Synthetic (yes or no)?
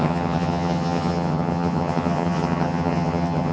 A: yes